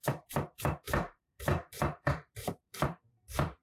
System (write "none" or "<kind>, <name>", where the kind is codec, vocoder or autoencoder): vocoder, BigVGAN v2